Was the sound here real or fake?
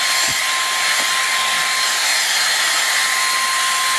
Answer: real